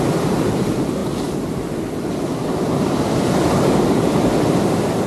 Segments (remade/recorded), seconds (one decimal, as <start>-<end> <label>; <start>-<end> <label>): 0.0-5.1 recorded